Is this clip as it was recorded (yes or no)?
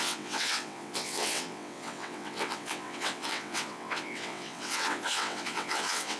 no